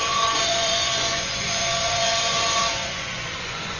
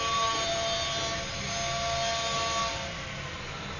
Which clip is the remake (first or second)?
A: first